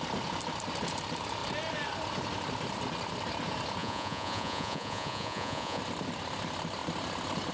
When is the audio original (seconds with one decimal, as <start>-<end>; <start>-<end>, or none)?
0.0-3.8; 5.8-7.5